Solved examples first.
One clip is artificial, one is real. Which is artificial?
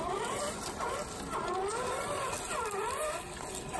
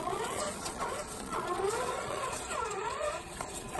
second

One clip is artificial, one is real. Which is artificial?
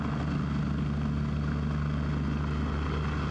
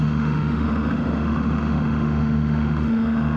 second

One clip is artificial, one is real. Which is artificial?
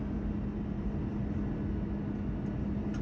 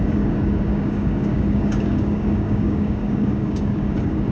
second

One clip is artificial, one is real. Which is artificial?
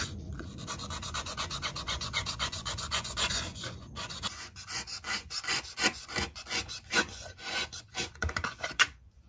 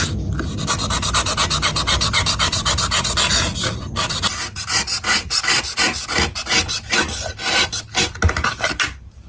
first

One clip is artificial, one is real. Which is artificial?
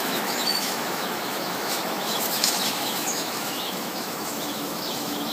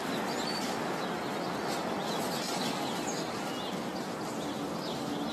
first